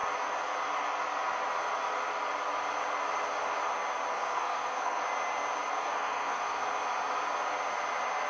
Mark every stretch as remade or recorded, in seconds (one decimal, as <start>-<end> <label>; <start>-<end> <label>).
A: 0.0-4.1 recorded; 4.1-5.0 remade; 5.0-5.7 recorded; 5.7-6.6 remade; 6.6-8.3 recorded